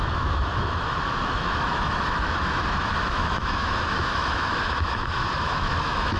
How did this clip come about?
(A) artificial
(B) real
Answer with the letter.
A